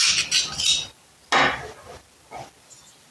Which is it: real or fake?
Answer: real